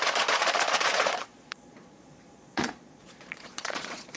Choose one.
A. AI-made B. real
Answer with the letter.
A